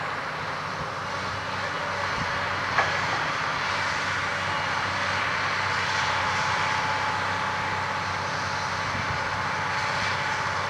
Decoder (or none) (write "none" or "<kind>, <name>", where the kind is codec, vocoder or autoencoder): none